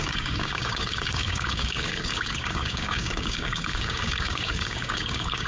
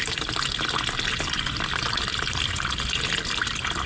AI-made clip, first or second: first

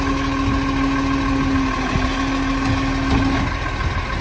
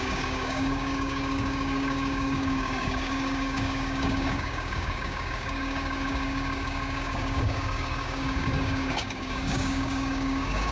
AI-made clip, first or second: second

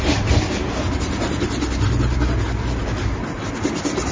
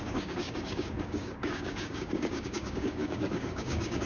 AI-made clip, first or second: second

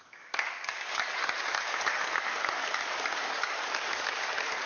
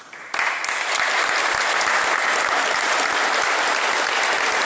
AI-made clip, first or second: first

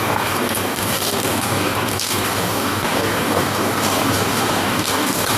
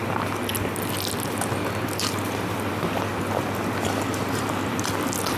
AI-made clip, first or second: first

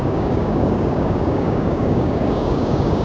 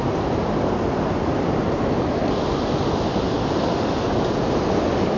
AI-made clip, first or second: first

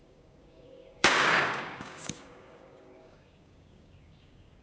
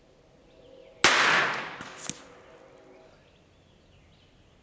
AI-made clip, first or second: first